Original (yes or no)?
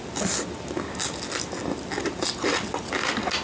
yes